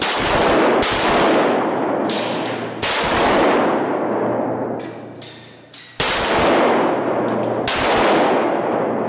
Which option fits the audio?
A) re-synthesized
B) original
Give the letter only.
B